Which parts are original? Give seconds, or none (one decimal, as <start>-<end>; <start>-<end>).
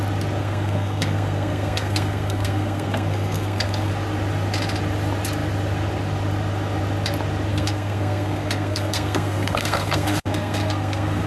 0.0-0.4; 3.9-7.5